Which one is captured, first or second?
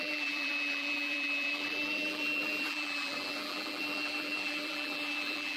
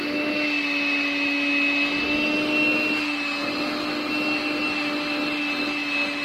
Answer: second